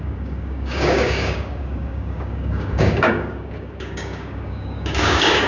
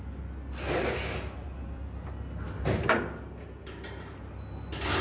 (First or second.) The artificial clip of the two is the first